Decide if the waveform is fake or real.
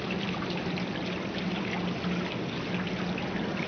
real